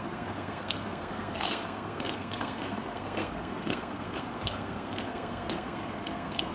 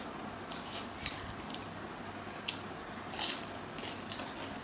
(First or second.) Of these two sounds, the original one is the second